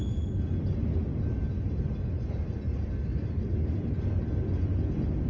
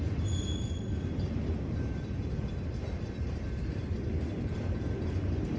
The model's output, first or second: second